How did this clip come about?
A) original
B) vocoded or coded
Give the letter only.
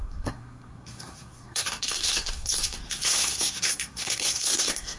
B